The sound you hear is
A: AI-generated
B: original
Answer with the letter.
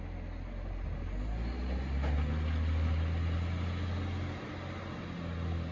B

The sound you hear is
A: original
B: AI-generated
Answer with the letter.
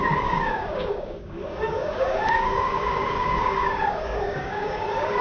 B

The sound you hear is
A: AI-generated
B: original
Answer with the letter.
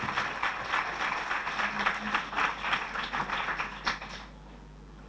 B